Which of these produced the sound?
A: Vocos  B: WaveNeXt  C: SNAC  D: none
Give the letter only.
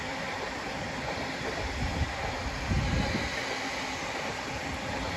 D